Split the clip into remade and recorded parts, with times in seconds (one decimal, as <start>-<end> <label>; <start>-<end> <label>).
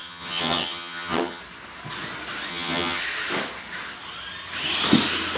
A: 0.0-1.4 remade; 1.4-2.5 recorded; 2.5-3.0 remade; 3.0-5.4 recorded